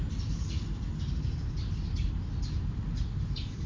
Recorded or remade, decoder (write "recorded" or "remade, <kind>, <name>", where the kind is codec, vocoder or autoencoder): recorded